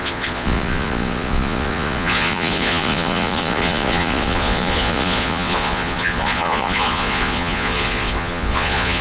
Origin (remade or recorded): remade